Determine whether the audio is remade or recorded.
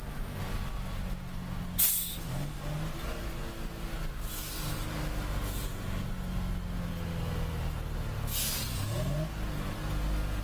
recorded